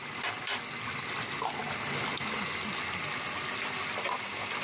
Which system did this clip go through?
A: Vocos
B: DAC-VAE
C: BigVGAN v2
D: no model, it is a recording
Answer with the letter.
D